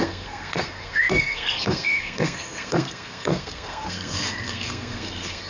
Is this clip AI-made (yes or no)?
yes